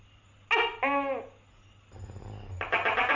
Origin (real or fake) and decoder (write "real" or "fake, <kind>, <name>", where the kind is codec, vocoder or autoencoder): real